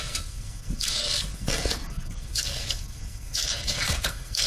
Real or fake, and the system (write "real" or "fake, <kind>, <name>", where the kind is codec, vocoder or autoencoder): fake, codec, SNAC